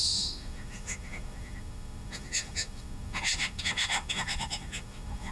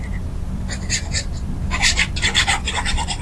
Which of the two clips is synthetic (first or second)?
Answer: first